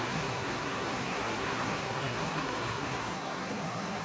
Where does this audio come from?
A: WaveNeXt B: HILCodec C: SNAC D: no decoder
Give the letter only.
C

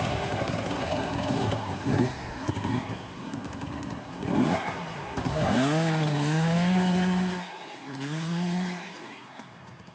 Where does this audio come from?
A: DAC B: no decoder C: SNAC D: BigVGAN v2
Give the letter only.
C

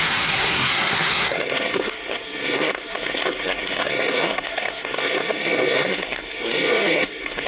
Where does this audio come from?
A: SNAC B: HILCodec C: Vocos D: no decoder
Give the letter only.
A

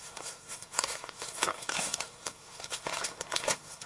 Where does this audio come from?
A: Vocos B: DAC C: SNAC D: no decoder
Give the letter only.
C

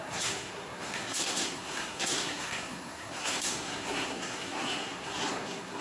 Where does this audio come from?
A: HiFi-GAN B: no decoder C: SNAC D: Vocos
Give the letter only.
C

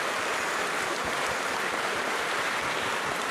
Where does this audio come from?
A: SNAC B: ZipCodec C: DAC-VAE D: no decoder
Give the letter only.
D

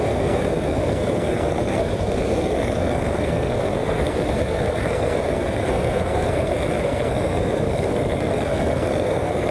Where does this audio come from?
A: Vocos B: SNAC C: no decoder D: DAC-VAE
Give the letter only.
B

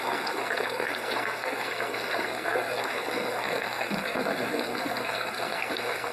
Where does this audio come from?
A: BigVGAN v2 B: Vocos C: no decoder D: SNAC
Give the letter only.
D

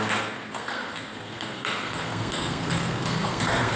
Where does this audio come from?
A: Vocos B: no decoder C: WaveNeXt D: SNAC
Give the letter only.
D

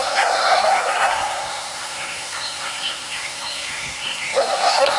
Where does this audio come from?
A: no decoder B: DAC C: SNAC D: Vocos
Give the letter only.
C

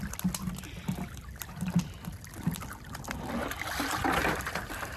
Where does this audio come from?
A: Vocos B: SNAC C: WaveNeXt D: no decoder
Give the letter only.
D